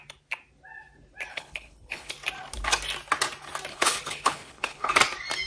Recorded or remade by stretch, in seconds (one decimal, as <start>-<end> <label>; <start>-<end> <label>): 0.0-1.3 recorded; 1.3-2.1 remade; 2.1-3.7 recorded; 3.7-4.9 remade; 4.9-5.5 recorded